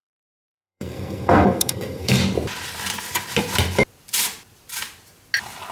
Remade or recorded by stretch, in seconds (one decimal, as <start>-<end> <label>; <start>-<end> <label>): 0.0-2.2 remade; 2.2-5.7 recorded